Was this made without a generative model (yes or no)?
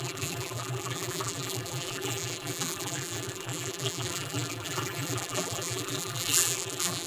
no